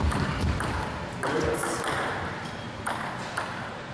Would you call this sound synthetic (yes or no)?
no